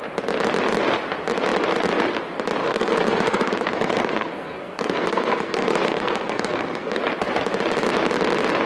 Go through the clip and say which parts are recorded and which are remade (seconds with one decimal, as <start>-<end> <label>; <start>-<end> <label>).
0.0-2.6 recorded; 2.6-7.0 remade; 7.0-8.7 recorded